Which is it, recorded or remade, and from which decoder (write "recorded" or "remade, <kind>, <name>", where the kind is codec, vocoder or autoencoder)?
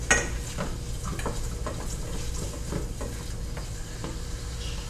recorded